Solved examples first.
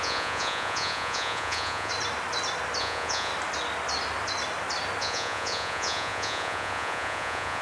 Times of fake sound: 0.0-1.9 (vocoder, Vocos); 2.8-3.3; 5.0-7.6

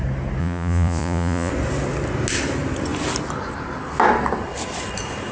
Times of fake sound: 0.4-1.5 (vocoder, Vocos)